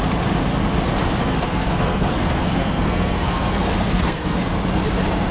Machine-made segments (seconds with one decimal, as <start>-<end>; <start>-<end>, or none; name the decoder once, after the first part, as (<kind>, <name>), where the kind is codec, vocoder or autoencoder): 1.2-4.4 (codec, SNAC)